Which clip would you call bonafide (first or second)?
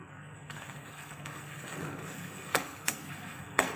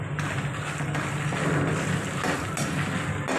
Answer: second